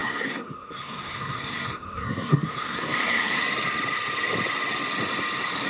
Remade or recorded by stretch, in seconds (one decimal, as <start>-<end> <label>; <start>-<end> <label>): 0.0-3.4 remade; 3.4-5.7 recorded